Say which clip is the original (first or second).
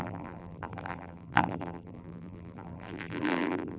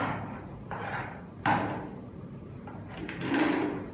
second